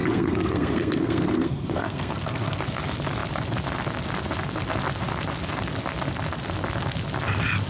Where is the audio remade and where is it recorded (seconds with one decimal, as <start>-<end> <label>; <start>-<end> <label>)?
0.0-2.6 remade; 2.6-7.7 recorded